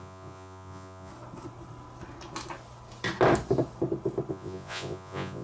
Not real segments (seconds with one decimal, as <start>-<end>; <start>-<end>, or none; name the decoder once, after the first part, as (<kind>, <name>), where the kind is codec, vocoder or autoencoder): 0.0-1.1 (vocoder, Vocos); 4.3-5.4